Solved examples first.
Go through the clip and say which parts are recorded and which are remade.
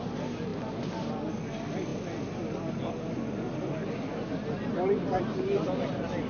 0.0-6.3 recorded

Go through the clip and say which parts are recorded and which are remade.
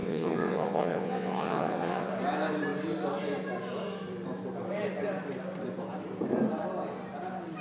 0.0-2.1 remade; 2.1-7.6 recorded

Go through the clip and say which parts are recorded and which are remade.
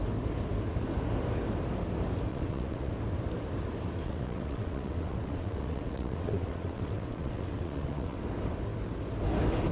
0.0-2.3 recorded; 2.3-2.9 remade; 2.9-4.0 recorded; 4.0-8.2 remade; 8.2-9.7 recorded